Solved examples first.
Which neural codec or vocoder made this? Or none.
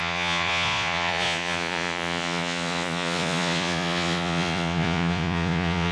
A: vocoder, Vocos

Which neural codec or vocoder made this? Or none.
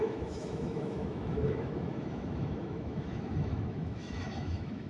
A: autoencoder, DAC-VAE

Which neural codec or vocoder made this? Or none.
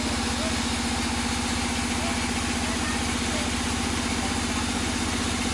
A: none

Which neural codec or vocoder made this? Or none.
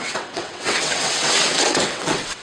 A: vocoder, WaveNeXt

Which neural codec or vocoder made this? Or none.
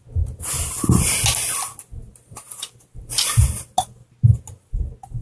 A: none